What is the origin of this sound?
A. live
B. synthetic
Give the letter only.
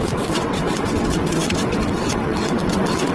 B